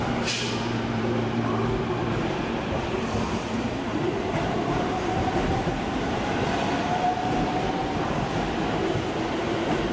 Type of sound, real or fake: fake